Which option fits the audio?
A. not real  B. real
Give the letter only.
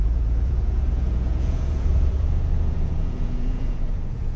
A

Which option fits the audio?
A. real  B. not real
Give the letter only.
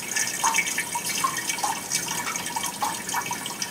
A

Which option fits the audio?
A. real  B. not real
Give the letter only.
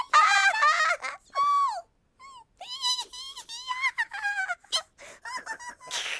A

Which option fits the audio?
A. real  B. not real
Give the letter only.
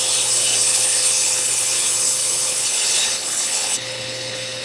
B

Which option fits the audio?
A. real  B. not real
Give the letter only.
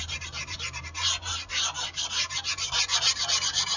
B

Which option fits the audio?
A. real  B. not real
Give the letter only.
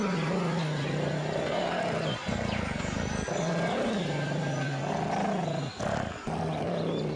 A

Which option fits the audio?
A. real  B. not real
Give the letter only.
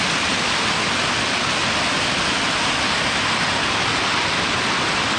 A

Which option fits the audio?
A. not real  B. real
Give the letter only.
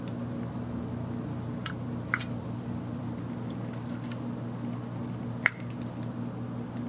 B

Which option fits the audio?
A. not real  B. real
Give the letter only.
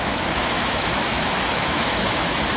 A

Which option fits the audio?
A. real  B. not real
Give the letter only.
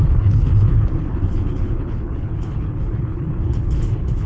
B